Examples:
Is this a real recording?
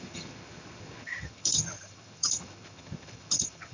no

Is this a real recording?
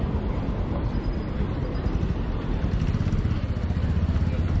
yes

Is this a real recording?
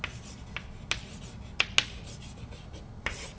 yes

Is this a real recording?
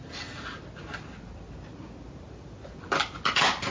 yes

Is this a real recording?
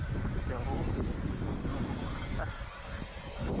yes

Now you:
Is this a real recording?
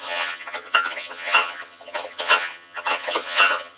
no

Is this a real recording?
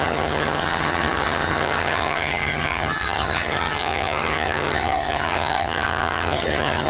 no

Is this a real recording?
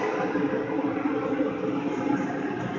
yes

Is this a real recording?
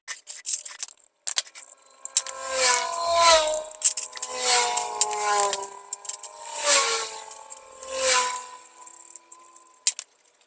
yes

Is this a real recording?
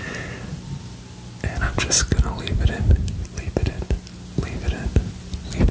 yes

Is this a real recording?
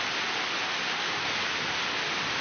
yes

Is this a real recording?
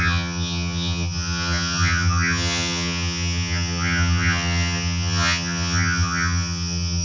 no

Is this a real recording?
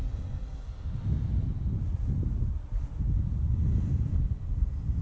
yes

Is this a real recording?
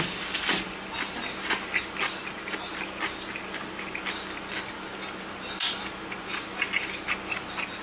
yes